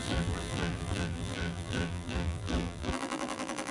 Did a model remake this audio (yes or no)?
yes